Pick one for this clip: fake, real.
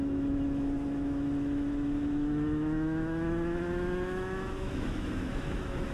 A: fake